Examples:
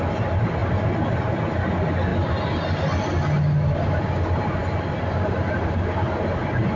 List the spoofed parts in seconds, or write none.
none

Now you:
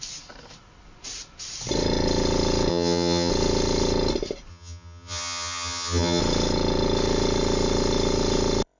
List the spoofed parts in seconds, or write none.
2.7-3.3 (vocoder, HiFi-GAN); 4.5-6.2

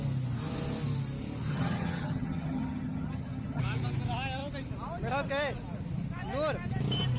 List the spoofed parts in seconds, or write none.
1.5-3.6 (vocoder, HiFi-GAN)

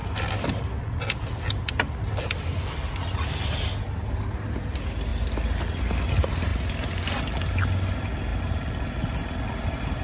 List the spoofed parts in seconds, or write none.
none

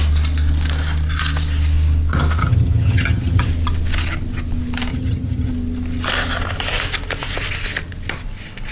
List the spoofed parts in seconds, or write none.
2.4-3.5 (vocoder, HiFi-GAN); 4.9-5.5

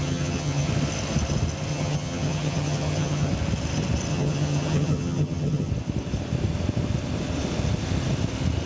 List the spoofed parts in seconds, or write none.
0.0-0.7 (vocoder, HiFi-GAN); 1.7-3.3; 4.1-5.7

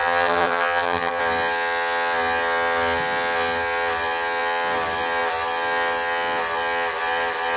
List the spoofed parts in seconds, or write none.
0.0-1.2 (vocoder, HiFi-GAN)